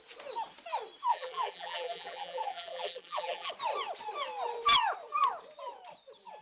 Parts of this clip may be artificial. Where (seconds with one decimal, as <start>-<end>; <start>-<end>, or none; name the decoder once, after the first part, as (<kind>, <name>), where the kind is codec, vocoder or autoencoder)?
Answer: 1.1-3.5 (vocoder, BigVGAN v2)